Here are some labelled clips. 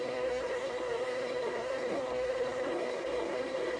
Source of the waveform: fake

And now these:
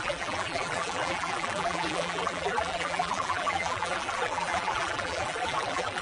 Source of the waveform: fake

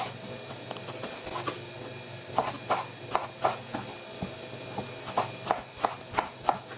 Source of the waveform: real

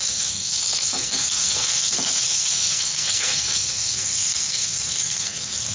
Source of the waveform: fake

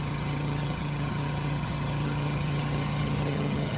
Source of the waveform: fake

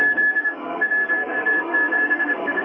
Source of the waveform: fake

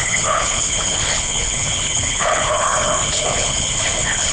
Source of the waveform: fake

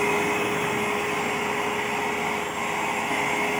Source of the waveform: real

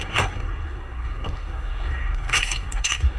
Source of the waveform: fake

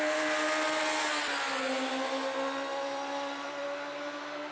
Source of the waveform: real